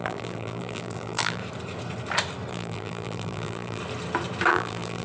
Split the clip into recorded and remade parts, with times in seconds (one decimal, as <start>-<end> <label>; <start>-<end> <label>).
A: 0.0-1.4 remade; 1.4-2.5 recorded; 2.5-3.8 remade; 3.8-4.5 recorded; 4.5-5.0 remade